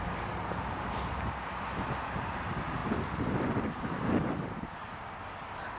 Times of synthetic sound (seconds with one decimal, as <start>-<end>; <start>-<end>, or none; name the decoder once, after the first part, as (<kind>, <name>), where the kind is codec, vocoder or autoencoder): none